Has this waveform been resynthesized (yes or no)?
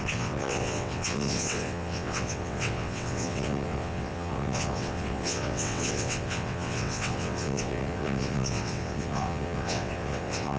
yes